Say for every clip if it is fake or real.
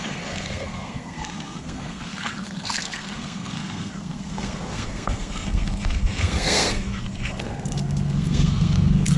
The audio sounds fake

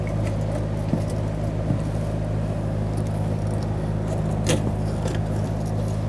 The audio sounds real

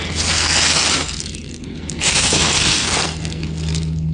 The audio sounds fake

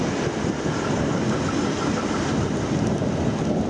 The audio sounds real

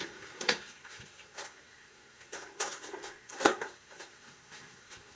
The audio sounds fake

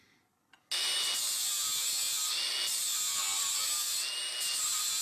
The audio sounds real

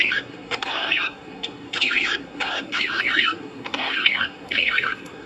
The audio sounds fake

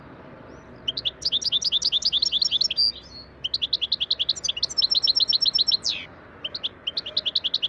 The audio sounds real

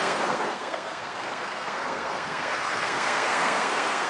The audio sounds fake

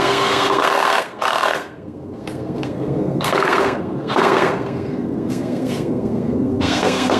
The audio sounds fake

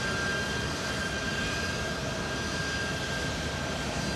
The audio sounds real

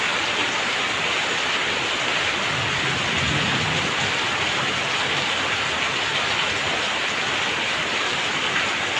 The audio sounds real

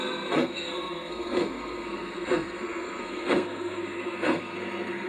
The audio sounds fake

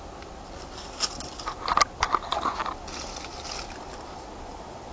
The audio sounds real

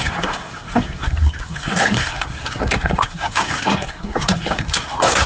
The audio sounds fake